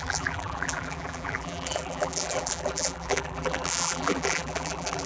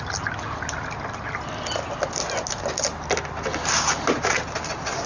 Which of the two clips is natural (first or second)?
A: second